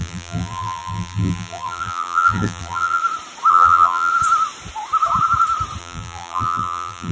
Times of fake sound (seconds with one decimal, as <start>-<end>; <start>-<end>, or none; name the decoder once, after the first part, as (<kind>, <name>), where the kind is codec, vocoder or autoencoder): 0.0-3.0 (vocoder, BigVGAN v2); 3.5-4.1; 5.8-7.1